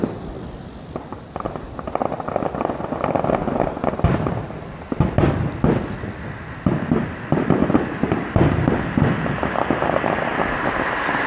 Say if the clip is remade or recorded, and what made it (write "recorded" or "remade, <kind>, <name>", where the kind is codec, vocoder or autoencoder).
recorded